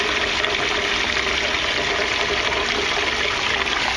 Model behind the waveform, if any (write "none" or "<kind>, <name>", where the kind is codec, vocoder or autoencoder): none